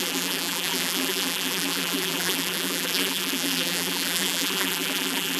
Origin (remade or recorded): remade